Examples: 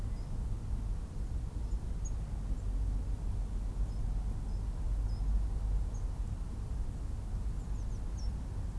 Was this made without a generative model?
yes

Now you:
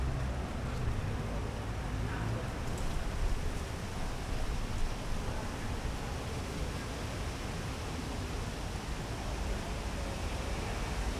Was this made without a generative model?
yes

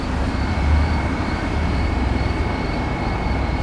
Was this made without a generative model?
no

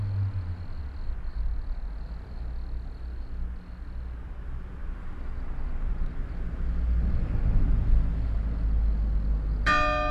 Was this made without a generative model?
yes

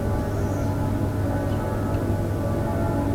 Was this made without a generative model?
yes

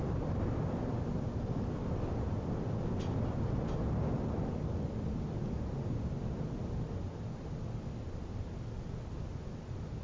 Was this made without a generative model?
yes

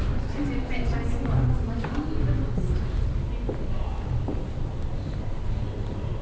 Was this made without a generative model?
yes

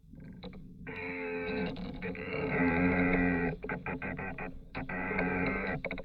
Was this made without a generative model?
no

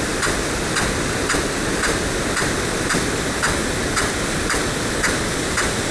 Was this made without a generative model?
yes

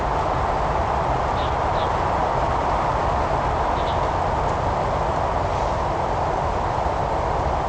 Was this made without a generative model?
yes